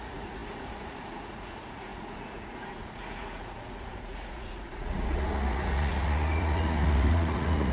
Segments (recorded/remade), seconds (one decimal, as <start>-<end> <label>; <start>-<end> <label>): 0.0-7.7 remade